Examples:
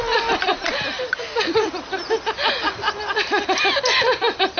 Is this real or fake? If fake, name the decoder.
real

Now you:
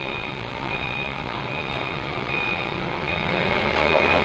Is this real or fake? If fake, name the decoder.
fake, vocoder, WaveNeXt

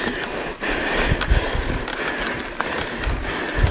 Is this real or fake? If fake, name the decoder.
real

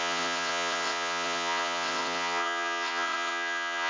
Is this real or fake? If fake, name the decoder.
fake, vocoder, WaveNeXt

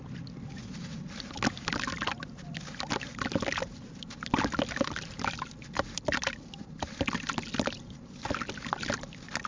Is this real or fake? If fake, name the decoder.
real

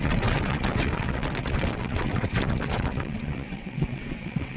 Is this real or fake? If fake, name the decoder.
fake, vocoder, WaveNeXt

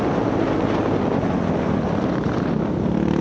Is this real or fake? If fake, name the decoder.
real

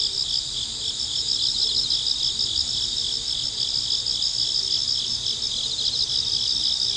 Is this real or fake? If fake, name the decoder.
real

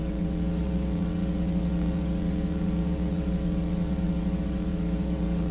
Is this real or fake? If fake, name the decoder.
fake, vocoder, WaveNeXt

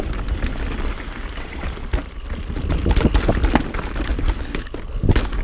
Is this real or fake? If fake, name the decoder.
real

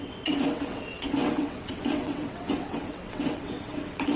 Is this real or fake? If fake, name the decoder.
fake, vocoder, WaveNeXt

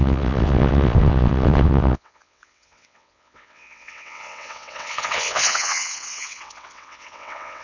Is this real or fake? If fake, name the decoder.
fake, vocoder, WaveNeXt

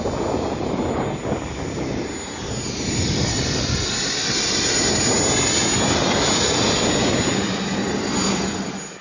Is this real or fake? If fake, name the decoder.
real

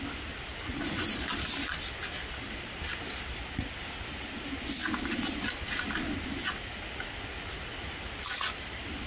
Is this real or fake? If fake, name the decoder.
real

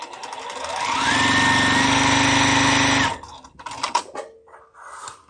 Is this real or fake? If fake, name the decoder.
real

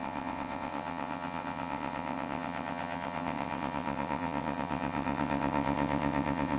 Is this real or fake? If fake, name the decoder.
fake, vocoder, WaveNeXt